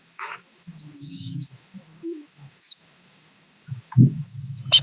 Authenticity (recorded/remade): remade